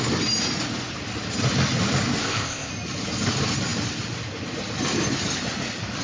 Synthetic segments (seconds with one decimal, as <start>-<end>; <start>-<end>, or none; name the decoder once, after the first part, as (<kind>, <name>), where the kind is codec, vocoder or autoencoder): 2.2-2.7 (codec, ZipCodec)